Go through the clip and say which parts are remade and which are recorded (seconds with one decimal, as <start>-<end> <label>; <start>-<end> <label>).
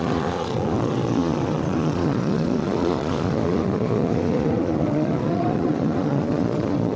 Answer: 0.0-7.0 remade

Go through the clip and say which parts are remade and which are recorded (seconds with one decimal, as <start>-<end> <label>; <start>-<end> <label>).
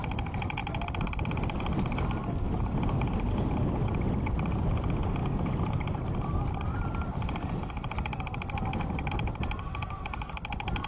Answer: 0.0-10.9 recorded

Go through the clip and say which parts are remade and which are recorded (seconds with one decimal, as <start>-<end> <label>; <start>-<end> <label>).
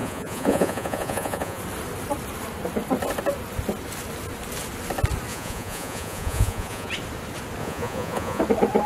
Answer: 0.0-1.6 remade; 1.6-5.3 recorded; 5.3-6.9 remade; 6.9-7.6 recorded; 7.6-8.4 remade; 8.4-8.9 recorded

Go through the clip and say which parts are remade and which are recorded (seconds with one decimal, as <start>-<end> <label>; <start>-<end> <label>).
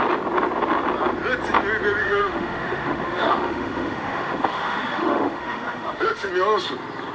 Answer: 0.0-2.0 recorded; 2.0-6.3 remade; 6.3-7.1 recorded